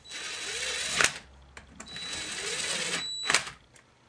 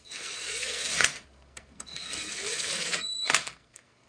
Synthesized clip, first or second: second